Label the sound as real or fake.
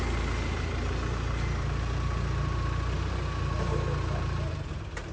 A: real